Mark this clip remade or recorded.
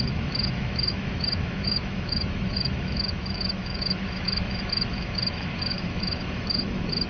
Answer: remade